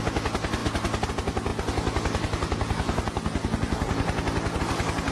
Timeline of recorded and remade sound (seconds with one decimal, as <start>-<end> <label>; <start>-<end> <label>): 0.0-5.1 recorded